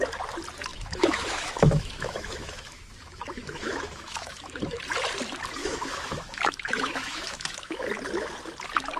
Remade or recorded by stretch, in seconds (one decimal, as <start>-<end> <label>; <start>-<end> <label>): 0.0-0.7 recorded; 0.7-4.8 remade; 4.8-5.6 recorded; 5.6-7.8 remade; 7.8-9.0 recorded